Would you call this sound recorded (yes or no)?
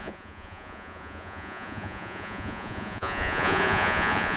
no